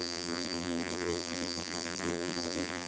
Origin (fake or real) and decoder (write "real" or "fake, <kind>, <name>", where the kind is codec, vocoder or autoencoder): fake, vocoder, BigVGAN v2